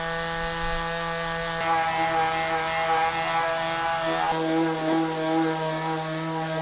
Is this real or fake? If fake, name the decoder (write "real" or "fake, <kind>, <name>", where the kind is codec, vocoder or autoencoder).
real